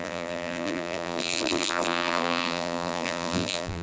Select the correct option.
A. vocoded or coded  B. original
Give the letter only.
A